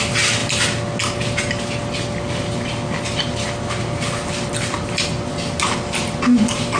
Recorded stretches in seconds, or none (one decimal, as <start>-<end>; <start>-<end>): 0.0-6.8